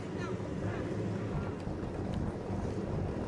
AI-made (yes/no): no